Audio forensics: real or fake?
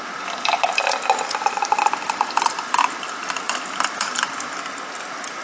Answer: real